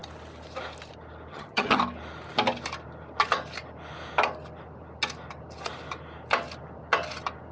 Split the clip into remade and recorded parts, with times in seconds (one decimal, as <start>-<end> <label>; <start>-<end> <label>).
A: 0.0-1.3 recorded; 1.3-1.8 remade; 1.8-7.5 recorded